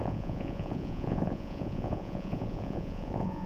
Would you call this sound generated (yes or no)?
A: yes